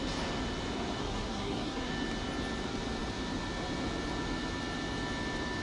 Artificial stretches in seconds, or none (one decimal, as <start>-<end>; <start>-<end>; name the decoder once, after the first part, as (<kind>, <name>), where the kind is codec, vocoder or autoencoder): 1.0-1.9 (codec, SNAC)